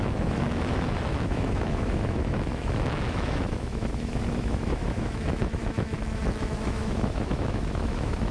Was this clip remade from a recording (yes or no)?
yes